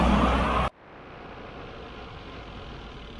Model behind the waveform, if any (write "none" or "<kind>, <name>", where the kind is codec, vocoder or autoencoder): none